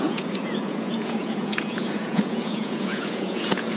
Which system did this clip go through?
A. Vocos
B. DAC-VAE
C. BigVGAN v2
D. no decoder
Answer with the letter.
A